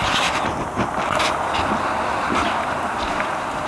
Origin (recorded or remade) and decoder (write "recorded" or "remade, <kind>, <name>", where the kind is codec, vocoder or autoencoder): recorded